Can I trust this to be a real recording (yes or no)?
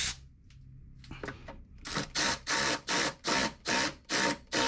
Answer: yes